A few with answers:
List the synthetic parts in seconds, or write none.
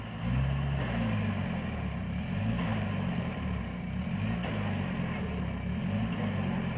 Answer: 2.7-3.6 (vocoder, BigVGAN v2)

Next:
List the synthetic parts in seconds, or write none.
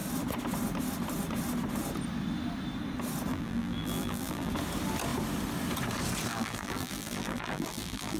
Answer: 3.3-4.5 (vocoder, BigVGAN v2); 6.3-8.2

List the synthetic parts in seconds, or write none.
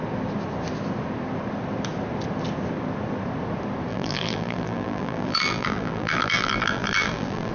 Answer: 3.9-7.5 (vocoder, BigVGAN v2)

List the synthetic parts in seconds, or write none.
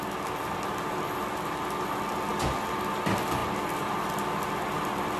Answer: none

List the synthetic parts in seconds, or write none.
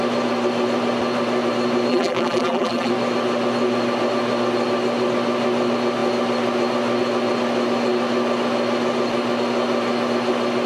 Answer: 1.9-2.9 (vocoder, BigVGAN v2)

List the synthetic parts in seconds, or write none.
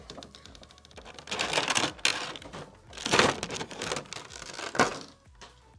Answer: 2.1-3.3 (vocoder, BigVGAN v2)